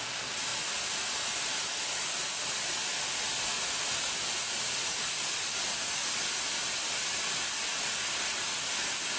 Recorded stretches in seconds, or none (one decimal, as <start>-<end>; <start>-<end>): 3.5-4.5